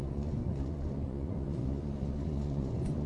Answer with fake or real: fake